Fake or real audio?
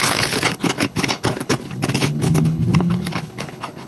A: fake